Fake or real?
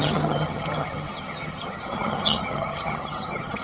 fake